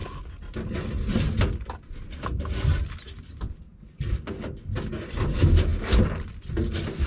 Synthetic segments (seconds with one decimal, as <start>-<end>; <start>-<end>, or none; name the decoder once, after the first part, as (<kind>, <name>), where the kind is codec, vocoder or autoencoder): none